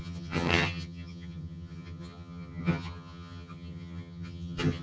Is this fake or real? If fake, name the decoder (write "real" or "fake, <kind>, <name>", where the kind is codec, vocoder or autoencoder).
fake, vocoder, HiFi-GAN